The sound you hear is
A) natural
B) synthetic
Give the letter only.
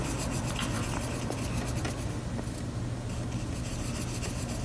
A